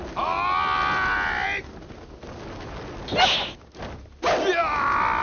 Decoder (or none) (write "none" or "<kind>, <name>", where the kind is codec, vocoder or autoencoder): none